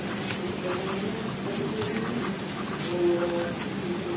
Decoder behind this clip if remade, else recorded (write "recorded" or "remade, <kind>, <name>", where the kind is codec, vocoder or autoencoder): recorded